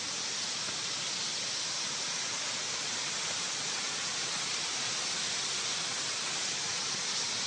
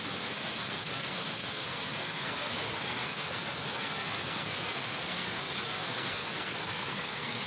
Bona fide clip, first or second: first